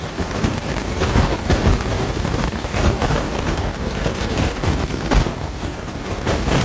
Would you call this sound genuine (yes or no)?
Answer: no